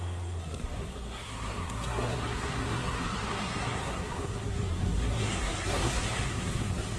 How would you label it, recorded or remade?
remade